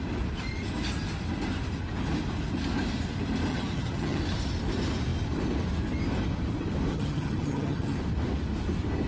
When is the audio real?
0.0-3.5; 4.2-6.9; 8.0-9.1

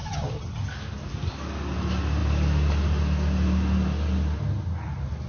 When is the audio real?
0.6-5.3